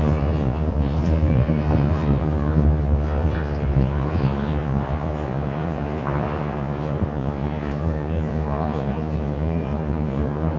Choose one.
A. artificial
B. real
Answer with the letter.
A